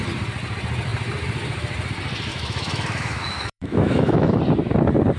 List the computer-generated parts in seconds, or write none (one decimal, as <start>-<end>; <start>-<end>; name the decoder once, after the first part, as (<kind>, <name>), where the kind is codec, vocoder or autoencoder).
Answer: 2.3-4.4 (autoencoder, DAC-VAE)